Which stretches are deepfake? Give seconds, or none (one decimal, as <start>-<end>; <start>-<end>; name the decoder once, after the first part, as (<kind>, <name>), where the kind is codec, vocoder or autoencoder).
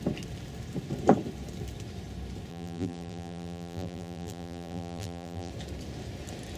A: 2.5-5.5 (vocoder, BigVGAN v2)